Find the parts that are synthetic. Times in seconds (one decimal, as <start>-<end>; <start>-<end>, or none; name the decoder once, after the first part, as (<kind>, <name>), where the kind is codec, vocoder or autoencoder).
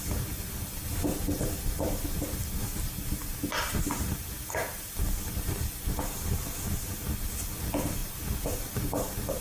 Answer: none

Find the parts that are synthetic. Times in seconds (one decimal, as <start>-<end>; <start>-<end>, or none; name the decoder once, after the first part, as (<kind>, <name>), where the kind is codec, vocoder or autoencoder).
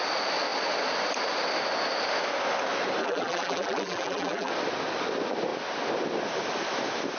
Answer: 3.0-4.5 (vocoder, BigVGAN v2)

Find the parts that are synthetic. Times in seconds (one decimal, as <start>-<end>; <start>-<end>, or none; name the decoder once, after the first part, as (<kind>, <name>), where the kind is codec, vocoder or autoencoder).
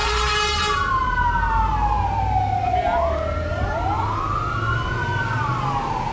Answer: 3.5-4.4 (vocoder, BigVGAN v2)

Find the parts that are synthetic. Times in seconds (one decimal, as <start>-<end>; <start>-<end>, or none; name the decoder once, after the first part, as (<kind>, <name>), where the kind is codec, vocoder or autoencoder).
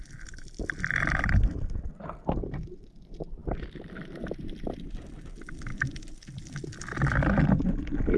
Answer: 3.4-5.3 (vocoder, BigVGAN v2); 5.7-6.4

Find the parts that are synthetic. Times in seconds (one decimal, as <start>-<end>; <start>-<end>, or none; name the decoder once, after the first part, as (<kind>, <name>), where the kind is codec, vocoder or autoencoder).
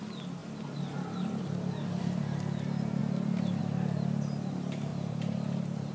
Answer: 4.9-5.9 (vocoder, BigVGAN v2)